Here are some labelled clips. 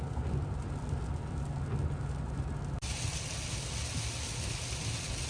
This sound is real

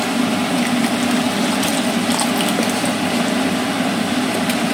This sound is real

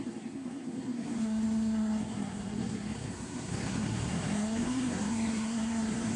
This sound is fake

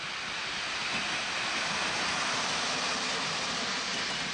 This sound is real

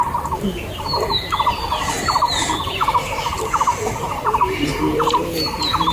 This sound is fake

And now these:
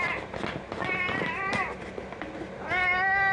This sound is real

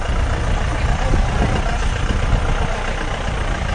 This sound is fake